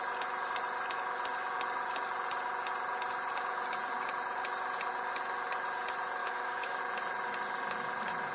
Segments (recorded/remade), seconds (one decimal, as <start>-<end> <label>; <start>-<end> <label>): 0.0-6.2 recorded; 6.2-6.8 remade; 6.8-8.3 recorded